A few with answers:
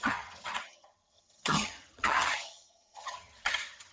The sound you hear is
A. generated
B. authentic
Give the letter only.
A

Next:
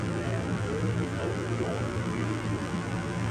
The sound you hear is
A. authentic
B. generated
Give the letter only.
B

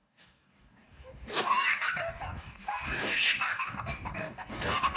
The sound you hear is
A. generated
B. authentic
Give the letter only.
A